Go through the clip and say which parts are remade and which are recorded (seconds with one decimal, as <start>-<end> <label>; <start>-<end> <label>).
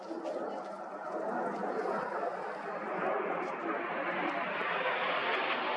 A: 0.0-5.8 recorded